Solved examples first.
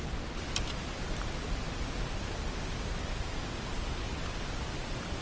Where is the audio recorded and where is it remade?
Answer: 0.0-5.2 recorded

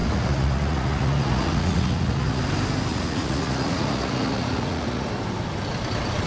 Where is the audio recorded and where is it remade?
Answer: 0.0-2.4 remade; 2.4-2.9 recorded; 2.9-5.1 remade; 5.1-6.3 recorded

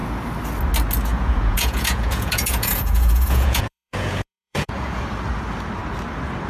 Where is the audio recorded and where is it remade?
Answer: 0.0-1.1 recorded; 1.1-5.0 remade; 5.0-6.5 recorded

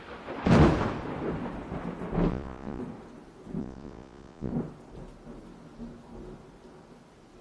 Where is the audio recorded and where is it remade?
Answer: 0.0-2.3 recorded; 2.3-2.8 remade; 2.8-3.6 recorded; 3.6-4.5 remade; 4.5-7.4 recorded